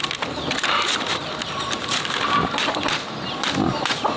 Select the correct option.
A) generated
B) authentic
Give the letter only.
B